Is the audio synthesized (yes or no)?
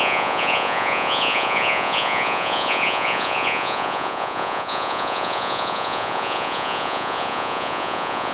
yes